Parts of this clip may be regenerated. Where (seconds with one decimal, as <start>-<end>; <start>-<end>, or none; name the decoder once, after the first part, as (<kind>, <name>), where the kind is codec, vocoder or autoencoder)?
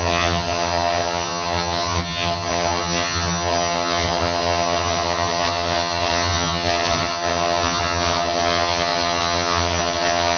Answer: 0.0-10.4 (vocoder, HiFi-GAN)